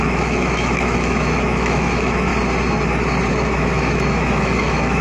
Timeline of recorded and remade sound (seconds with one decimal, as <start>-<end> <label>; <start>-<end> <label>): 0.0-2.3 remade; 2.3-3.3 recorded; 3.3-5.0 remade